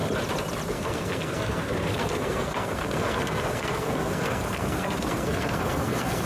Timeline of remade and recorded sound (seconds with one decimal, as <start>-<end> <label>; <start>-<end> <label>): 0.0-0.7 recorded; 0.7-6.3 remade

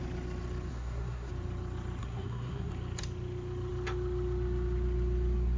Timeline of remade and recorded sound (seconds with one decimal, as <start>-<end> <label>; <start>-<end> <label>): 0.0-0.7 recorded; 0.7-1.3 remade; 1.3-2.0 recorded; 2.0-2.7 remade; 2.7-5.6 recorded